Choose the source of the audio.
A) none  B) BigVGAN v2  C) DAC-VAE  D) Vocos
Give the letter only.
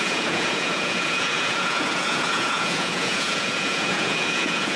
D